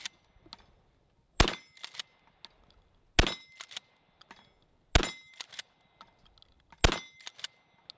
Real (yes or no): yes